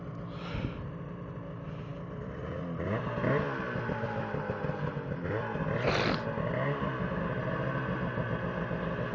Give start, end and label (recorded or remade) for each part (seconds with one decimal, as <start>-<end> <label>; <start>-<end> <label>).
0.0-9.1 recorded